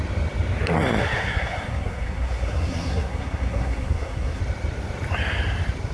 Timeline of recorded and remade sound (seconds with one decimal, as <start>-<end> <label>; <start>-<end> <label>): 0.0-1.0 recorded; 1.0-4.4 remade; 4.4-5.9 recorded

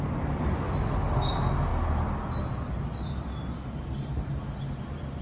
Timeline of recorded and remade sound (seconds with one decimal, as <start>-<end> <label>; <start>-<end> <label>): 0.0-5.2 recorded